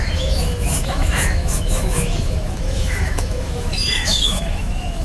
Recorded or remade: remade